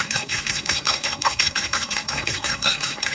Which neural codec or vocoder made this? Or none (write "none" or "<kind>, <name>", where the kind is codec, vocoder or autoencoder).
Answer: codec, SNAC